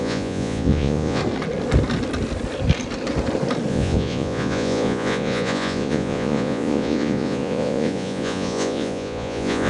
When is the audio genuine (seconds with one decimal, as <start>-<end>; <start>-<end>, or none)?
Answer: 1.2-3.7